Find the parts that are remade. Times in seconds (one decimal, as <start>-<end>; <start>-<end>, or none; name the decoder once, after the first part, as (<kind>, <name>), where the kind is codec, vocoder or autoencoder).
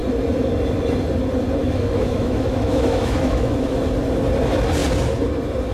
1.6-3.8 (autoencoder, DAC-VAE)